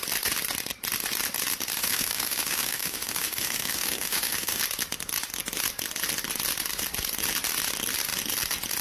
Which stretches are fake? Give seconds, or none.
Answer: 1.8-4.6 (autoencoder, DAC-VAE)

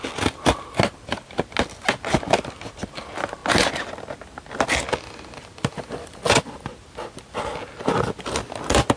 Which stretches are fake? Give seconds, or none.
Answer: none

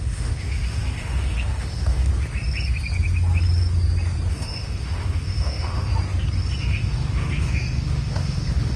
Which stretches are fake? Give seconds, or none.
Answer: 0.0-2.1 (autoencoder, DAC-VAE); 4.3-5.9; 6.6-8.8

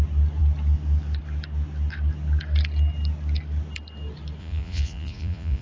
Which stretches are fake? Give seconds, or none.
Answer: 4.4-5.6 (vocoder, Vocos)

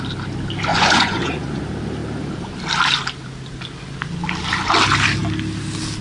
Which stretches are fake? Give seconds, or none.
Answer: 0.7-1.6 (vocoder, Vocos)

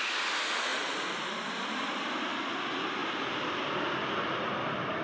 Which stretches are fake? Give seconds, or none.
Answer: none